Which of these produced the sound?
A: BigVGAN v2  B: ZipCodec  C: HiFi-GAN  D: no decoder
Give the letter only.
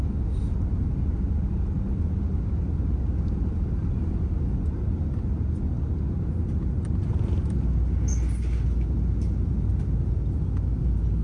D